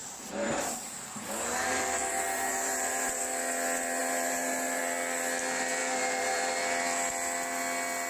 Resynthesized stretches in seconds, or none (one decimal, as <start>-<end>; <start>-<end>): 0.0-3.2; 4.0-4.8; 5.8-6.5